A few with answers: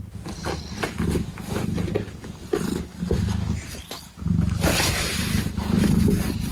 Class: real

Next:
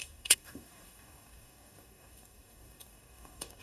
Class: fake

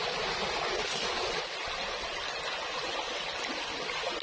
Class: real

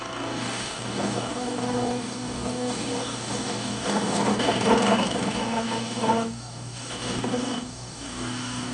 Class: fake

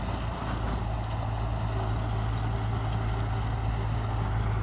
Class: real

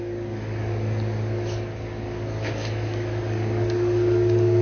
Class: fake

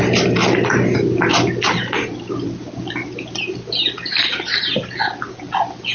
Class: real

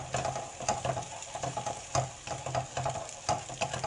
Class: real